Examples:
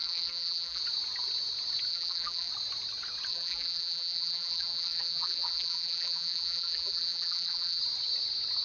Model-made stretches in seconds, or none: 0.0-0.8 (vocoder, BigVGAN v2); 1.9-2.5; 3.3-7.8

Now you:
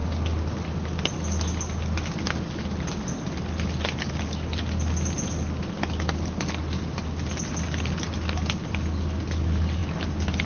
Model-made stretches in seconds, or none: none

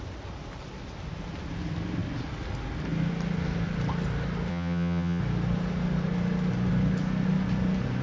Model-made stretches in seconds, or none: 4.5-5.2 (vocoder, HiFi-GAN)

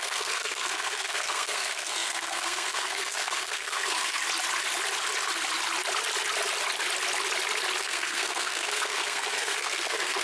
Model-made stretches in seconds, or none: 0.0-4.2 (codec, SNAC); 7.8-10.2

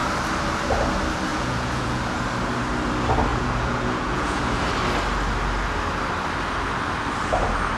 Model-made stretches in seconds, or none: 1.3-2.2 (vocoder, Vocos); 3.3-4.6

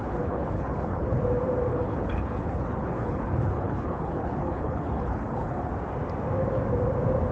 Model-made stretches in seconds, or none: 0.0-1.2 (codec, HILCodec); 1.7-5.7

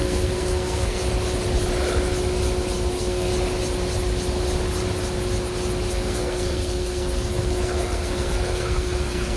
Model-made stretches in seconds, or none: 0.0-1.0 (codec, SNAC); 2.9-3.3; 5.9-9.4

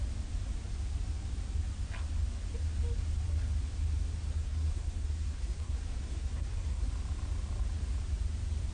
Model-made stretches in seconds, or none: 4.3-6.9 (codec, SNAC)